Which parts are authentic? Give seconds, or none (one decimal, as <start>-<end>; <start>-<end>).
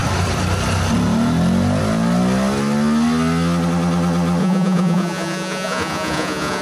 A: 0.0-4.4